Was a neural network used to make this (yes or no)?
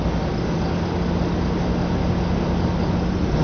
no